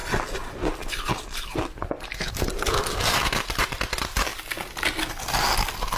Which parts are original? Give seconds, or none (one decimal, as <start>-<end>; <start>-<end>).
0.0-6.0